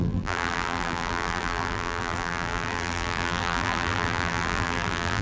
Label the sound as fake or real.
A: fake